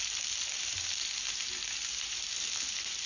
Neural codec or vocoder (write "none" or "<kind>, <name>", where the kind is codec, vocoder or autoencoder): none